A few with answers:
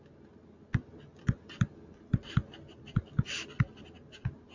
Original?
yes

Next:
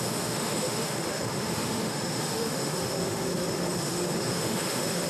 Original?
no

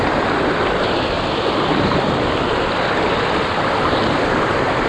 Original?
yes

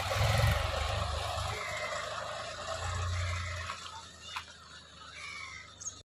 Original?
yes